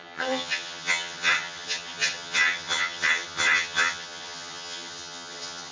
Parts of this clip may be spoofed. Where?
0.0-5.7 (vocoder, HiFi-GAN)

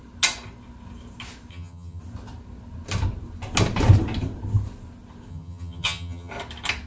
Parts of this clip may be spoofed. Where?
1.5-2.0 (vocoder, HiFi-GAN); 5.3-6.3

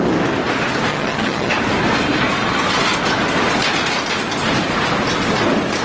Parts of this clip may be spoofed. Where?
0.9-1.5 (vocoder, HiFi-GAN)

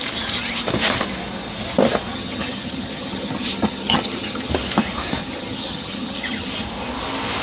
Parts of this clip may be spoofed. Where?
2.1-4.5 (vocoder, HiFi-GAN); 5.2-6.5